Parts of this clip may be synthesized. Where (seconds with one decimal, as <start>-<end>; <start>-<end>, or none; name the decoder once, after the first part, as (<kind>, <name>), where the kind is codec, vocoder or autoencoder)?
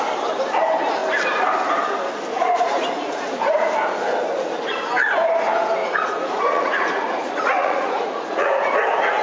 2.3-3.7 (vocoder, Vocos); 5.8-8.7